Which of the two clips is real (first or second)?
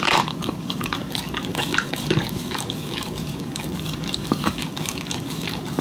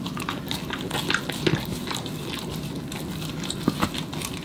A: second